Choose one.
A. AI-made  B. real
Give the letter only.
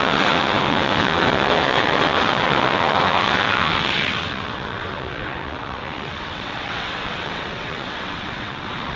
A